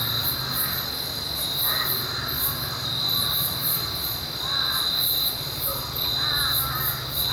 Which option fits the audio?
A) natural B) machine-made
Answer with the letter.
B